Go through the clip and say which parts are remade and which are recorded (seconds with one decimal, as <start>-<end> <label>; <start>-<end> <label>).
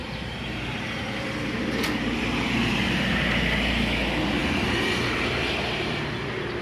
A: 0.0-3.2 remade; 3.2-4.4 recorded; 4.4-6.0 remade; 6.0-6.6 recorded